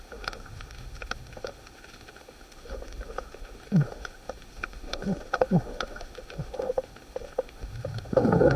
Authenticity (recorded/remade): remade